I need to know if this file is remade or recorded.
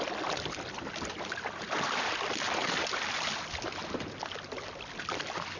recorded